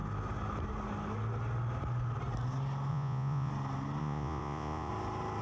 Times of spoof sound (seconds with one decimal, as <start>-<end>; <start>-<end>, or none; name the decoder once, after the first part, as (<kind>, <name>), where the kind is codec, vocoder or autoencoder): 2.9-3.5 (vocoder, Vocos); 4.0-4.9